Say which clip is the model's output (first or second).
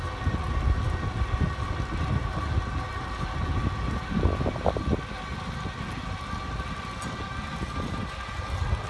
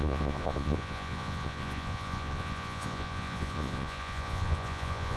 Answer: second